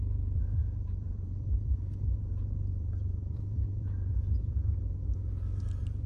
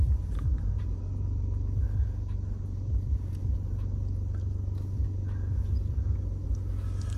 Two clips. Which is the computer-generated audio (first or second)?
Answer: first